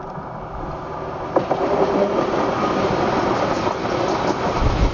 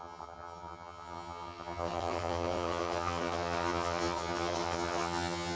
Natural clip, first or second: first